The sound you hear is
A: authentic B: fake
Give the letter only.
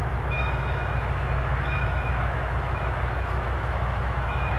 B